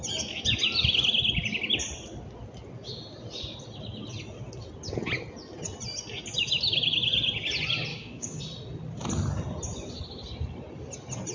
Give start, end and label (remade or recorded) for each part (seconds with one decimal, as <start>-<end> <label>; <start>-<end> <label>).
0.0-7.9 recorded; 7.9-8.4 remade; 8.4-11.3 recorded